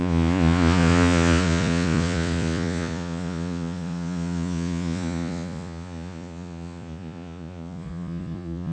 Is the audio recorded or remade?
remade